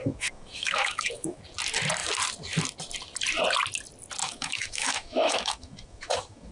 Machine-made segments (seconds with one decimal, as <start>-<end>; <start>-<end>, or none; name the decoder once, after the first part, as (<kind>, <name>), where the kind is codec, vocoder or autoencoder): 0.0-1.4 (autoencoder, DAC-VAE); 4.2-6.5